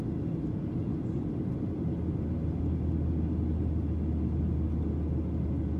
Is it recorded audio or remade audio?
recorded